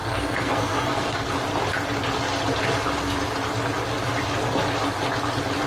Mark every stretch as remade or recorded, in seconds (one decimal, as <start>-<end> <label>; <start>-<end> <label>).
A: 0.0-1.3 remade; 1.3-5.7 recorded